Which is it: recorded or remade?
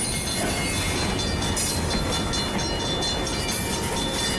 recorded